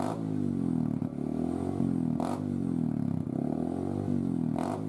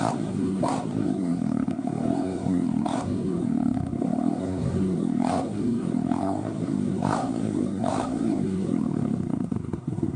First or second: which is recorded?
first